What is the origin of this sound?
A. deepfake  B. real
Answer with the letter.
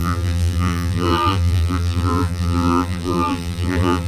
A